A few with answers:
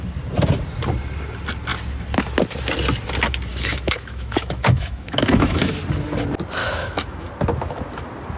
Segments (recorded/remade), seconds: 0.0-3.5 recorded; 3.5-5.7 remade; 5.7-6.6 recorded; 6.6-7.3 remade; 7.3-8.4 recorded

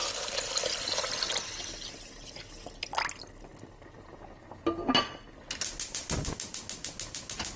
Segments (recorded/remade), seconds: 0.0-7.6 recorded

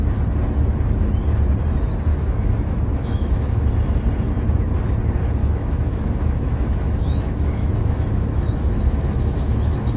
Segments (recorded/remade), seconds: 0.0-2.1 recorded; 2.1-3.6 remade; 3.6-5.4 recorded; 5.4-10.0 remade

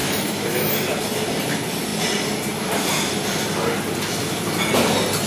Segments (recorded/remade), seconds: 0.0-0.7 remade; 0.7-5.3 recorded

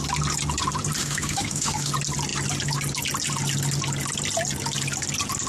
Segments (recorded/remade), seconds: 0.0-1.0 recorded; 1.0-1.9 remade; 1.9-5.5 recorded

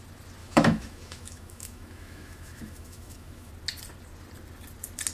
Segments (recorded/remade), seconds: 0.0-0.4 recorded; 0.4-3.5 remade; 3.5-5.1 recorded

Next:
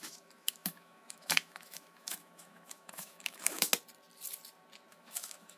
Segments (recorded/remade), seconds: 0.0-3.7 remade; 3.7-4.9 recorded; 4.9-5.6 remade